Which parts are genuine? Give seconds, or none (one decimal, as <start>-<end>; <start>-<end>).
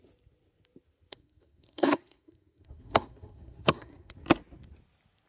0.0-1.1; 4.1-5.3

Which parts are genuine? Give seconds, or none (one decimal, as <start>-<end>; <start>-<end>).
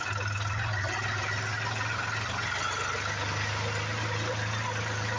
0.0-5.2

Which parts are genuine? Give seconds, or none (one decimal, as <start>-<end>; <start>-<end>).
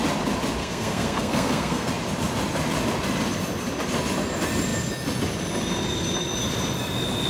0.0-0.6; 1.9-7.3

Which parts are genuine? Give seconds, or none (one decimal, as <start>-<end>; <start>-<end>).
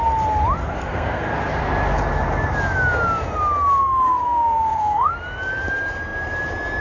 0.0-0.6; 1.3-3.8; 5.1-6.8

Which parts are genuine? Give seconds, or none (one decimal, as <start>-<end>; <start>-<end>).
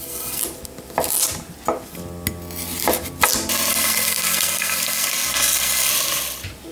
0.4-3.7; 5.9-6.7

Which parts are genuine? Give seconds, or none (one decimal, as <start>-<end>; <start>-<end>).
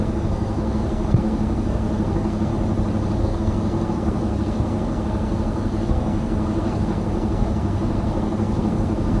2.5-3.2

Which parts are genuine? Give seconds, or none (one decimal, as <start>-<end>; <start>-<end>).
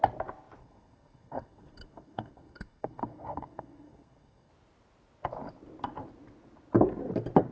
0.0-0.6; 4.5-7.5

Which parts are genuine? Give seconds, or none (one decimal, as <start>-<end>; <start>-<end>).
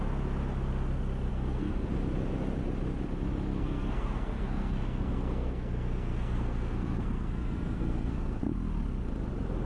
0.0-1.3; 1.9-3.5; 8.4-9.7